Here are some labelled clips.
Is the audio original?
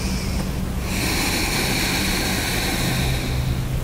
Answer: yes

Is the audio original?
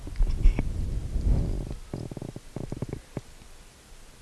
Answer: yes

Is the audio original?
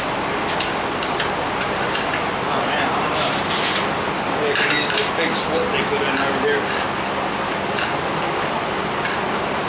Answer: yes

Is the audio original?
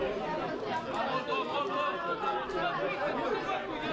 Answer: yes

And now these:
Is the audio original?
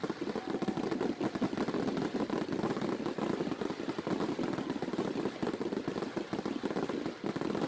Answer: yes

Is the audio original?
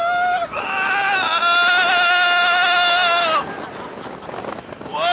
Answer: yes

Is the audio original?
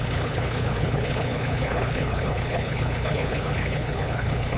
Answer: no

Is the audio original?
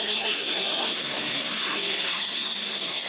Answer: no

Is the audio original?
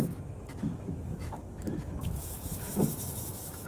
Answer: no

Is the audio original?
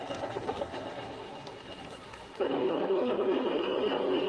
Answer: no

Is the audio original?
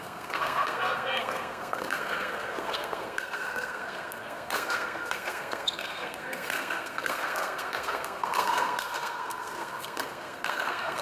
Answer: no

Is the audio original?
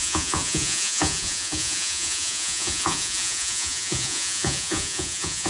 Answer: no